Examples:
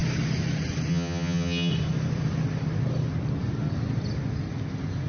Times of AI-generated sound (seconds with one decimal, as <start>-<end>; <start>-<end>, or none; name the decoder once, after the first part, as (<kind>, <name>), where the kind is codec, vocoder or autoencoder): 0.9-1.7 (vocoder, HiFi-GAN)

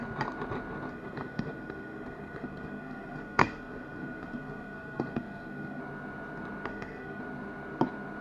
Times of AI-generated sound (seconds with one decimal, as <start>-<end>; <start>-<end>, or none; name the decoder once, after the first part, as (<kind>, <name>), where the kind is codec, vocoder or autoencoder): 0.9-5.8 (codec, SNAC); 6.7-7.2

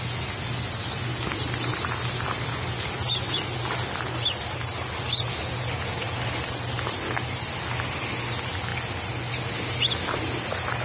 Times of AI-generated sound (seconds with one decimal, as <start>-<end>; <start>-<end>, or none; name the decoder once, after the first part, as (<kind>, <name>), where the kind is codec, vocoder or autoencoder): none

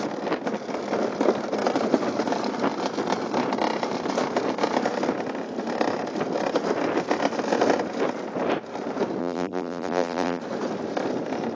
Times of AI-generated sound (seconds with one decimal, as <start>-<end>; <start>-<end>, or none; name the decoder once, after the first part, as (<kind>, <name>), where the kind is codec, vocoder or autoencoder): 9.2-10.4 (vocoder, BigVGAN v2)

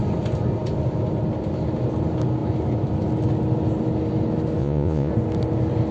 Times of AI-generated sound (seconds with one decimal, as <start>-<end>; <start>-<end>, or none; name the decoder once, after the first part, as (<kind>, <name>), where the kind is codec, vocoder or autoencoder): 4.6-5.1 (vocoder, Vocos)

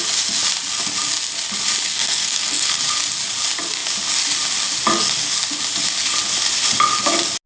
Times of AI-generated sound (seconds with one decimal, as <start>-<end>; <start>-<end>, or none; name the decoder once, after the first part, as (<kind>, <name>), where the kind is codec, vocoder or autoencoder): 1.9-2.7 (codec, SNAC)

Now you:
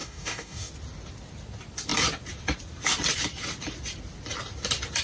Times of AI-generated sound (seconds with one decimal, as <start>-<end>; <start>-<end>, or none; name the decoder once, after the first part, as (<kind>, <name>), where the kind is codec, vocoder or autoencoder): 0.0-0.7 (codec, DAC)